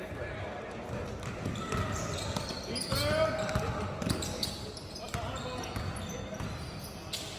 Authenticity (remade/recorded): recorded